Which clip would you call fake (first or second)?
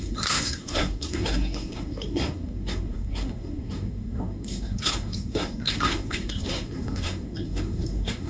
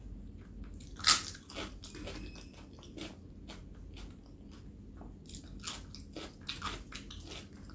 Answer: first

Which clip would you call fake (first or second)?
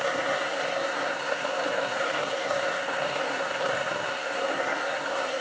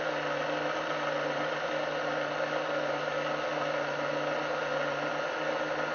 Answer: first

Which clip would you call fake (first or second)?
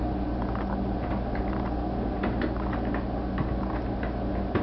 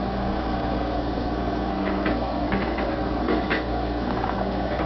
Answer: second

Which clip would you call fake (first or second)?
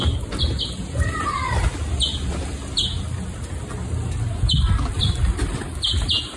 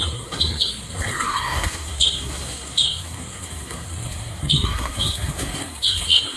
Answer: second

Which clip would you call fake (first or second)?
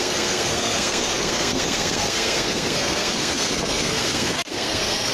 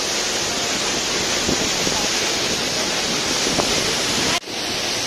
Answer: first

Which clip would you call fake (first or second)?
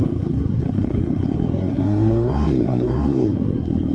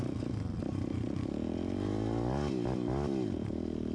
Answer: first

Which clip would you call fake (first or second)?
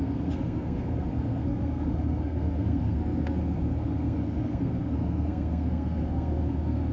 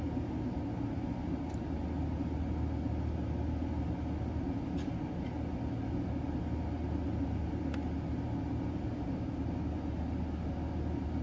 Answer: first